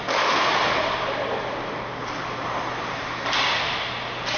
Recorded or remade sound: recorded